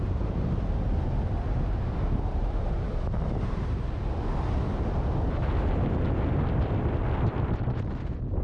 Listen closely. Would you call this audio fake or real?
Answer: real